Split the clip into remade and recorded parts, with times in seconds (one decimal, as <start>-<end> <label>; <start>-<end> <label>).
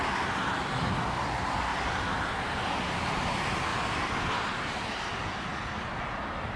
0.0-5.5 remade; 5.5-6.6 recorded